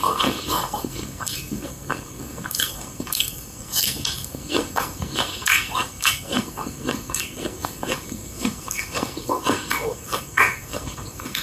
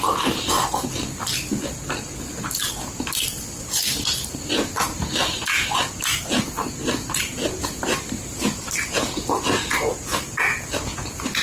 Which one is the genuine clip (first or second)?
second